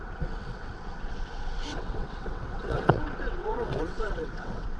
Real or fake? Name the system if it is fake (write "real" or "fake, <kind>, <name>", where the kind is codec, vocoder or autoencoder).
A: fake, vocoder, WaveNeXt